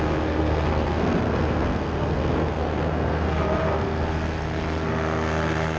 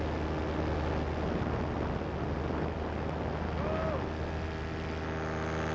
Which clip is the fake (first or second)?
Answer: first